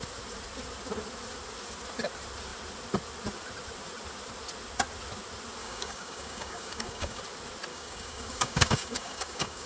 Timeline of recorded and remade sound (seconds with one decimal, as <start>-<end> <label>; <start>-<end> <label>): 0.0-5.6 recorded; 5.6-7.2 remade; 7.2-7.7 recorded; 7.7-9.7 remade

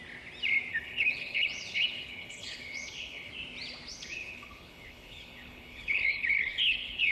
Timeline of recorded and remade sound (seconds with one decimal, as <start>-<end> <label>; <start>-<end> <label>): 0.0-0.7 recorded; 0.7-3.3 remade; 3.3-3.9 recorded; 3.9-7.1 remade

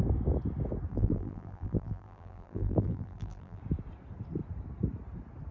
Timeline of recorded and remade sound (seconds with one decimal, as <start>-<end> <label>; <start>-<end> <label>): 0.0-0.9 recorded; 0.9-3.6 remade; 3.6-5.5 recorded

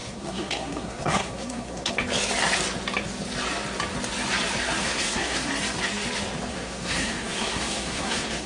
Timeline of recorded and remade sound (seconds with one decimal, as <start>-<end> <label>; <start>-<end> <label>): 0.0-1.9 remade; 1.9-4.8 recorded; 4.8-5.5 remade; 5.5-6.5 recorded; 6.5-8.5 remade